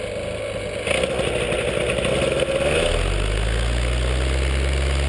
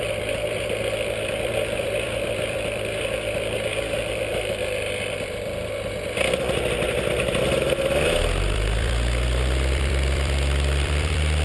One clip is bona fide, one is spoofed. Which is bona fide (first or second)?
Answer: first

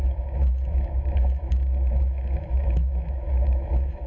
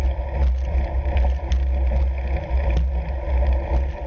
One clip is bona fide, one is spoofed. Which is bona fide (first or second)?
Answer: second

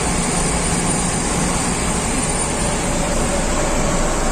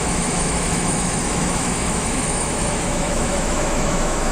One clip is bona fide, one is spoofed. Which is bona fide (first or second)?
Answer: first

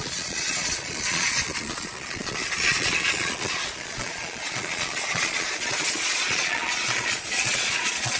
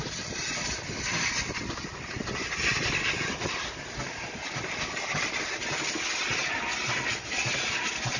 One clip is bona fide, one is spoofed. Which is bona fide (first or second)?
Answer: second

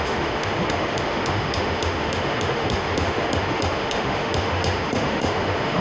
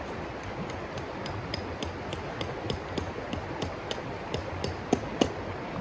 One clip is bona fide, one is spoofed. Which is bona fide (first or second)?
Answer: second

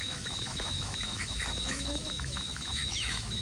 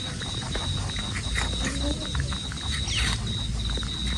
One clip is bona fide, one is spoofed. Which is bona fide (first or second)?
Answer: second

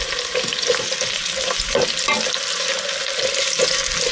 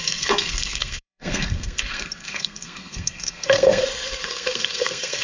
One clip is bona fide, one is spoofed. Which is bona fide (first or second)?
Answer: first